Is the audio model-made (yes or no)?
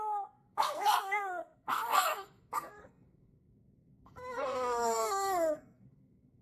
yes